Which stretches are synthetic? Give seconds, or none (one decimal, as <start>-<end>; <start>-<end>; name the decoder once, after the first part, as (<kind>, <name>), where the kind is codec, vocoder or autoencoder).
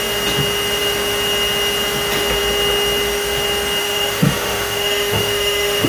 3.8-5.9 (autoencoder, DAC-VAE)